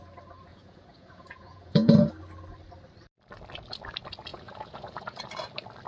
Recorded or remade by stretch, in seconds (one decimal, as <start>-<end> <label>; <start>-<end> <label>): 0.0-0.5 recorded; 0.5-2.1 remade; 2.1-4.3 recorded; 4.3-5.2 remade; 5.2-5.9 recorded